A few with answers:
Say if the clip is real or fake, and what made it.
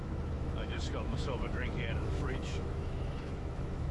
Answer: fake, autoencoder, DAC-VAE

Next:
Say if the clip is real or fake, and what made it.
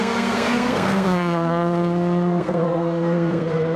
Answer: fake, codec, SNAC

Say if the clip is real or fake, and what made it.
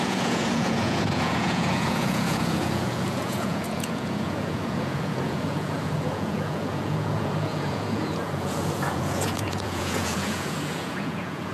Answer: fake, vocoder, Vocos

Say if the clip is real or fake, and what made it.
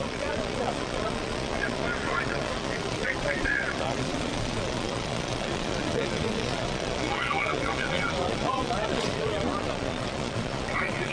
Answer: fake, vocoder, Vocos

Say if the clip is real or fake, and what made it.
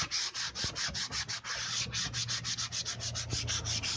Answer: real